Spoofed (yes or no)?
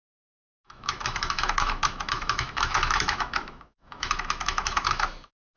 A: yes